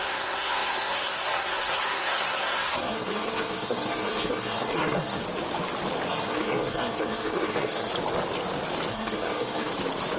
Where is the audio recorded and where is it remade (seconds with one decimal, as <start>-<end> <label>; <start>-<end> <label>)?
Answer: 0.0-5.2 remade; 5.2-6.1 recorded; 6.1-7.9 remade; 7.9-8.9 recorded; 8.9-9.7 remade; 9.7-10.2 recorded